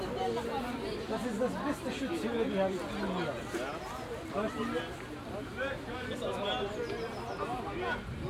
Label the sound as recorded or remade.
recorded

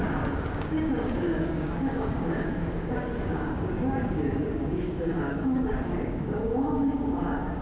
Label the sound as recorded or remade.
remade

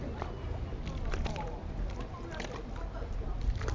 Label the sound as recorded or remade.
recorded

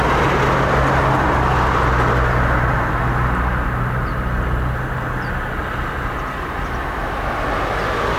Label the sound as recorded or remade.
recorded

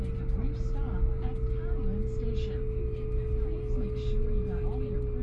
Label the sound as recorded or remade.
recorded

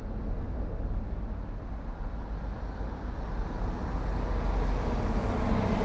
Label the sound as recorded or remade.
recorded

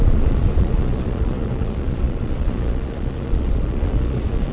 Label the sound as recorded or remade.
remade